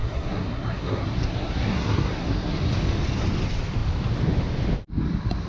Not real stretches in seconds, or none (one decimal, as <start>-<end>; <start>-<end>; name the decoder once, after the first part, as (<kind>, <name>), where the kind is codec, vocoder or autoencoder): 0.0-2.6 (codec, SNAC)

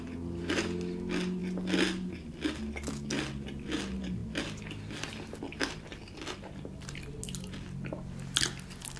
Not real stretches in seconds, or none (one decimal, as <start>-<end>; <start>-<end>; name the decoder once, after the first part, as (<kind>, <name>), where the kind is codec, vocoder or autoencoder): none

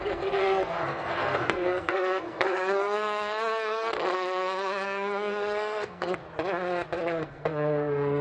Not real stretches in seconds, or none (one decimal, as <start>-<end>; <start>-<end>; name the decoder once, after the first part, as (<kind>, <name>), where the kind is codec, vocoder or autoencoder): 0.0-6.2 (codec, SNAC); 7.0-8.2

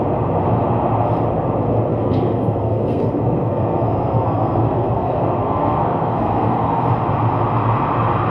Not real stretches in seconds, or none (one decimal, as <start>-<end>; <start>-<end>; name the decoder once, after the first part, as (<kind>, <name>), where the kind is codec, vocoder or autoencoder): 1.9-6.9 (codec, SNAC)

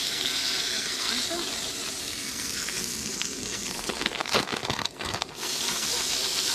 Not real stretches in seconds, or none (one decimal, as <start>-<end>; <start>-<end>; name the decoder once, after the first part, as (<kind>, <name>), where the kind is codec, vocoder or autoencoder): 0.0-1.1 (codec, SNAC); 2.0-6.5

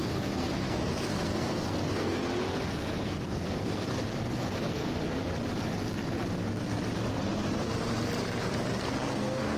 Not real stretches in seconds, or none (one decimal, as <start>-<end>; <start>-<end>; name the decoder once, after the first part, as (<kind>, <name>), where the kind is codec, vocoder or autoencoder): 0.0-2.2 (codec, SNAC); 2.7-3.9; 4.5-4.9; 8.8-9.6

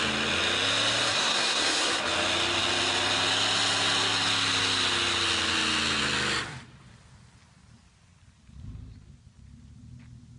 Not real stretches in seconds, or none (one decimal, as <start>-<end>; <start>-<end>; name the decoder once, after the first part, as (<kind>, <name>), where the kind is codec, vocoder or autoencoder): 1.1-2.0 (codec, SNAC)